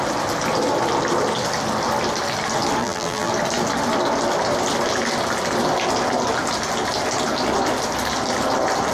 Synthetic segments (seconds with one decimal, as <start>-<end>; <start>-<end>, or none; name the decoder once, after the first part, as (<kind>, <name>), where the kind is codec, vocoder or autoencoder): 2.8-3.3 (vocoder, BigVGAN v2)